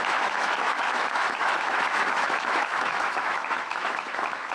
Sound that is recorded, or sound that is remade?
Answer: remade